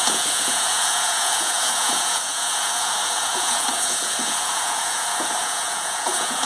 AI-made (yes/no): yes